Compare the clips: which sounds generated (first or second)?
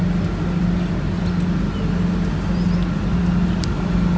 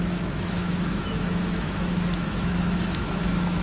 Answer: second